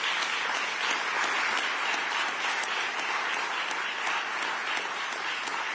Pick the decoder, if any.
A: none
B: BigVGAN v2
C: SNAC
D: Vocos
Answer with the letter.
A